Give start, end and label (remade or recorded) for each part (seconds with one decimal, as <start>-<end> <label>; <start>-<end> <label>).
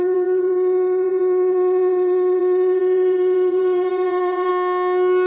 0.0-4.5 remade; 4.5-5.3 recorded